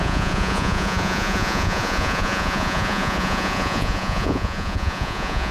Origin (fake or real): fake